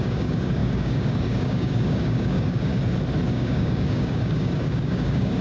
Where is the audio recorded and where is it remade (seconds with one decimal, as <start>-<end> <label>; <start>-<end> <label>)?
0.0-2.7 remade; 2.7-3.3 recorded; 3.3-5.4 remade